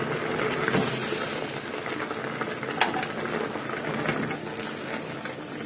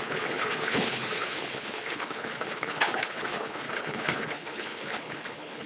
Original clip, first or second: first